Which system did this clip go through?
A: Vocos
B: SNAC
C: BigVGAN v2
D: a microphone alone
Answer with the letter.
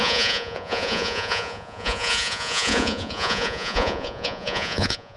A